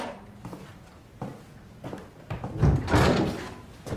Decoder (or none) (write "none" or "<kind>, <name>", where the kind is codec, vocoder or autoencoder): none